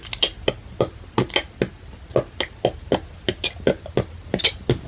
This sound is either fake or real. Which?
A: real